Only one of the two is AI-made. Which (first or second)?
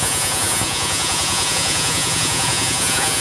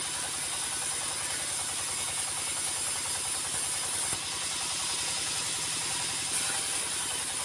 first